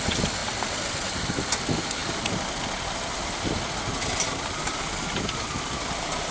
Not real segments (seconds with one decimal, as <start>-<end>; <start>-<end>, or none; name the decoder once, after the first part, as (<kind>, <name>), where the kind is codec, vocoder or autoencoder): none